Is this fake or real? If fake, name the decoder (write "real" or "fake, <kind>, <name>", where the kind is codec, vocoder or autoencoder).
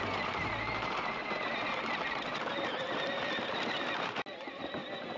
real